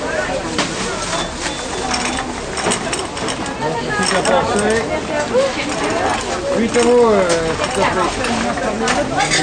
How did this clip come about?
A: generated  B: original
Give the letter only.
B